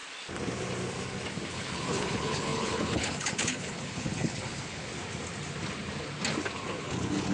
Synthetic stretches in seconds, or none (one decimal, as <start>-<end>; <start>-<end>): 1.5-4.9; 6.8-7.3